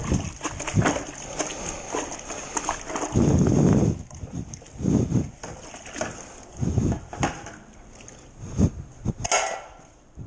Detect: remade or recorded recorded